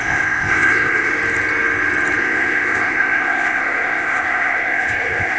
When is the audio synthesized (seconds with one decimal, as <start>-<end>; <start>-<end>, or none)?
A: 0.0-1.1; 2.2-5.4

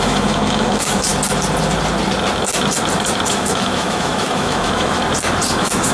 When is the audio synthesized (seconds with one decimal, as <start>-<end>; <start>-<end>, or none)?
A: 0.0-1.1; 3.3-5.0; 5.5-5.9

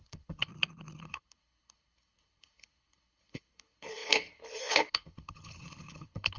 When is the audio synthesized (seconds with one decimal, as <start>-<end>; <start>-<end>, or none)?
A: 0.0-0.5; 1.0-6.4

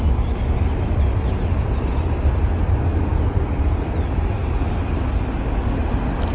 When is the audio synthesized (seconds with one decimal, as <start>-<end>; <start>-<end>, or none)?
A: none

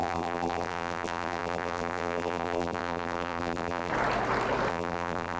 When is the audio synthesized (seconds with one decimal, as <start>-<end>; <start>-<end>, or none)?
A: 0.0-3.9; 4.7-5.4

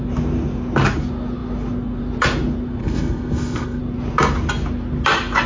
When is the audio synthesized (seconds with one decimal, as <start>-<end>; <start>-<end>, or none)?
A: 2.8-3.8